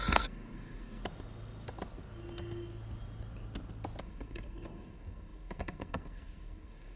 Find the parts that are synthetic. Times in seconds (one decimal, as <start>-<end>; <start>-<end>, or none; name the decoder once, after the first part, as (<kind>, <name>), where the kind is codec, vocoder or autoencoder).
0.0-1.0 (codec, SNAC); 4.0-7.0